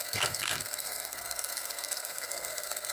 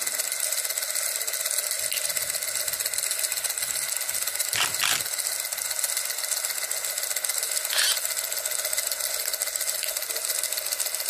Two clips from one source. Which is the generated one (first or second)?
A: first